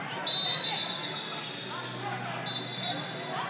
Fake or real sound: real